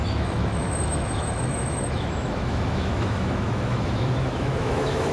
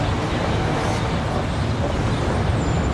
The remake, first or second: first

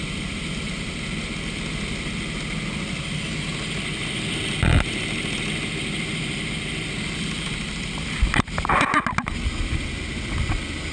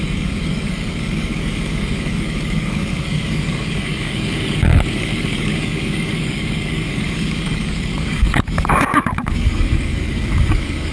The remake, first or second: second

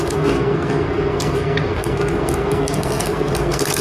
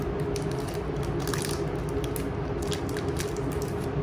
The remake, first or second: first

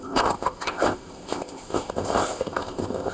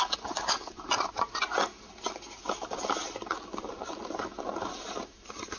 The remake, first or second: first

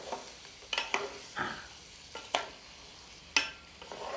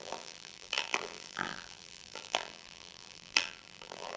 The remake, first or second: second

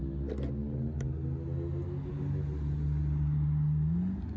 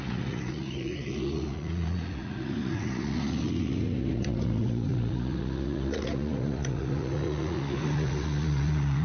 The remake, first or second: second